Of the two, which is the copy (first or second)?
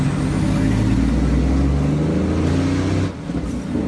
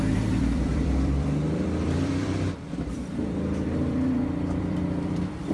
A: second